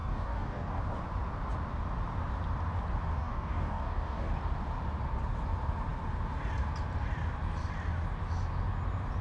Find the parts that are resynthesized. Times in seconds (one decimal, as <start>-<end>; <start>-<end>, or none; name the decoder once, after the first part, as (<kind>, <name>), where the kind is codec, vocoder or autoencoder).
0.0-0.8 (codec, DAC); 3.1-4.3